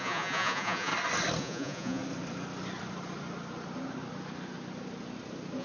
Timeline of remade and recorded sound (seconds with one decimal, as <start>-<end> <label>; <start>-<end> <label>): 0.0-0.9 remade; 0.9-1.4 recorded; 1.4-2.0 remade; 2.0-5.6 recorded